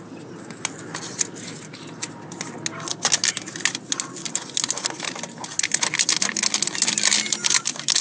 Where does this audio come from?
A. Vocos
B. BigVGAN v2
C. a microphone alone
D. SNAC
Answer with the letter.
C